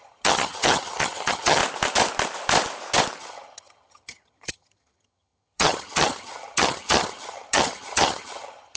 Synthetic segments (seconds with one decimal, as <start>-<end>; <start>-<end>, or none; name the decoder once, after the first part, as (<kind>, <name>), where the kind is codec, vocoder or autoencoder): 0.0-1.6 (vocoder, HiFi-GAN); 3.2-8.8